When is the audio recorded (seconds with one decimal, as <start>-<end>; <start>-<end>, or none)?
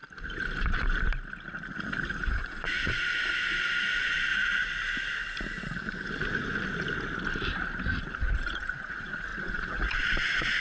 0.0-2.3; 4.3-8.1